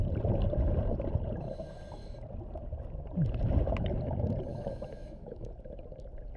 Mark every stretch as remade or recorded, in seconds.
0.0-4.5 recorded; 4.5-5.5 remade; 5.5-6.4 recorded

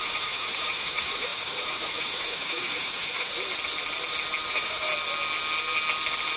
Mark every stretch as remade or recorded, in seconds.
0.0-3.3 remade; 3.3-4.5 recorded; 4.5-4.9 remade; 4.9-6.4 recorded

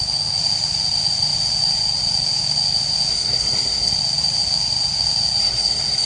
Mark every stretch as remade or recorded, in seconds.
0.0-3.1 recorded; 3.1-3.9 remade; 3.9-5.4 recorded; 5.4-6.1 remade